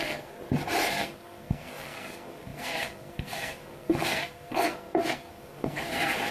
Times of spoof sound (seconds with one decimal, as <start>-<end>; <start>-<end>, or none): 0.0-0.4; 0.9-6.3